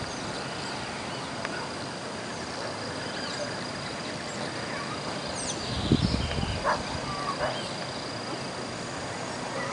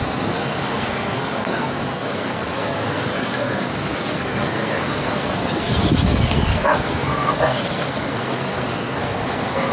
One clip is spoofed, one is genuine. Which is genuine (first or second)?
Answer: first